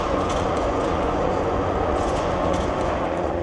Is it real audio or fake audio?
fake